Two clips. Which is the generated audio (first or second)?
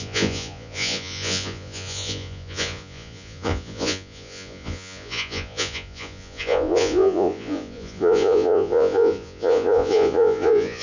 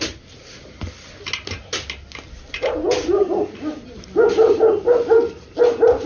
first